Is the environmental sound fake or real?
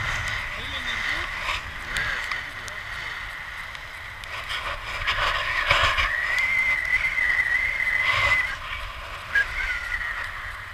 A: real